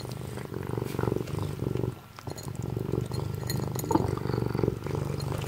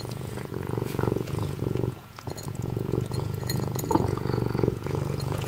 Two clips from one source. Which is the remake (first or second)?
second